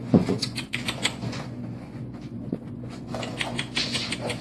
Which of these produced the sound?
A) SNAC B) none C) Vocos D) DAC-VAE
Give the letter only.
C